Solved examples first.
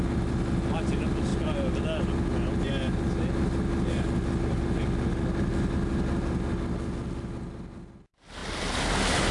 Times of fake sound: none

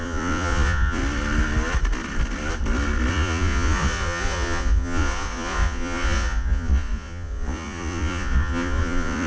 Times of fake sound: 0.0-1.0 (vocoder, Vocos); 3.1-9.3